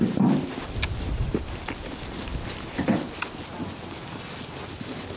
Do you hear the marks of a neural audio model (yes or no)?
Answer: no